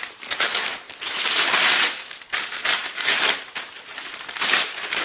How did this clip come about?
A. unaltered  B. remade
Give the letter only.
B